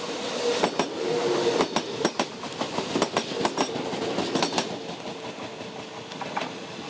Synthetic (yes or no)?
no